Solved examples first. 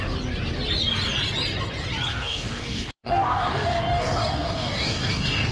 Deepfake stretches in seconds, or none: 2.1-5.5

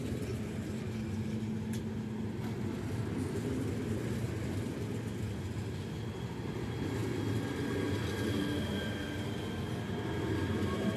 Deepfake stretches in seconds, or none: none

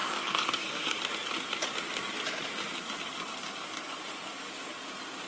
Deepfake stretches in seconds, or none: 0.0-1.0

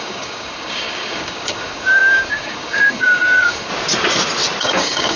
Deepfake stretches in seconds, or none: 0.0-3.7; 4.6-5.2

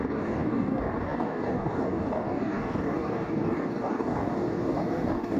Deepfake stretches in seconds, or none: 0.0-5.4

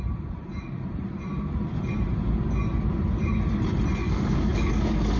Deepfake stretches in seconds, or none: 4.0-5.2

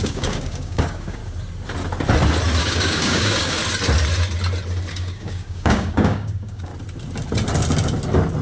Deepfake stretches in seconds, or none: 0.0-1.2; 2.6-3.6; 4.9-6.7